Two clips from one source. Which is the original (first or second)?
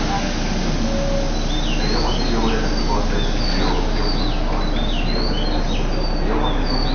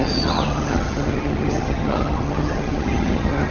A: first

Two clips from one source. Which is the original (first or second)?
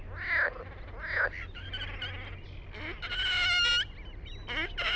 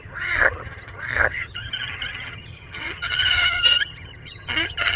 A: first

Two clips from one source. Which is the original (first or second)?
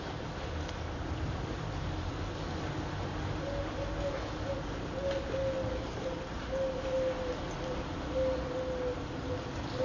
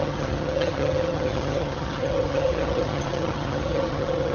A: first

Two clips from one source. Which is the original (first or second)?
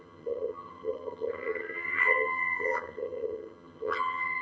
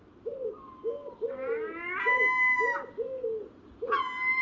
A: second